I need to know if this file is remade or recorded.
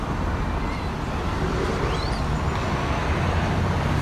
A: recorded